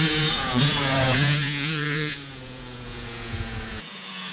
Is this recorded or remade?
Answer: remade